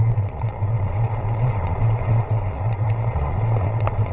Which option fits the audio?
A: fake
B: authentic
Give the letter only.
A